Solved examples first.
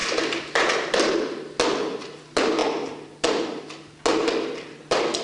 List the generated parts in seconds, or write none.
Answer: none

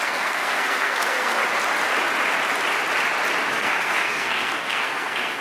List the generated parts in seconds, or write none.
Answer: 0.0-1.4; 3.5-5.4